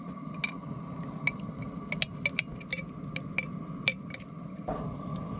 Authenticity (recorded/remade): recorded